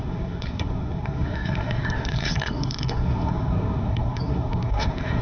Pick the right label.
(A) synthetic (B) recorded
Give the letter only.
A